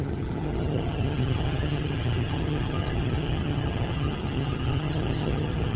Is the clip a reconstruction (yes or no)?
yes